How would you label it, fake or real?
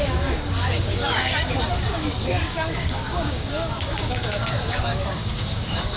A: fake